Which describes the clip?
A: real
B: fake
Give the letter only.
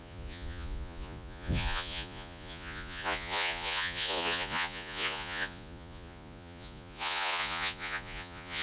B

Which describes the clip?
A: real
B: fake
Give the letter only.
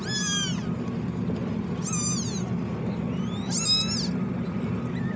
A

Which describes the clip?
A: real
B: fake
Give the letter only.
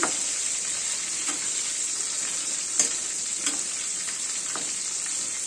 A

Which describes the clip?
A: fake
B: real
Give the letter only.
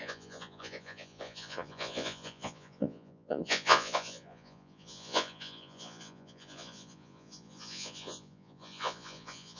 A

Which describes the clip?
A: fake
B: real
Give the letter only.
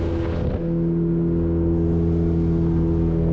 B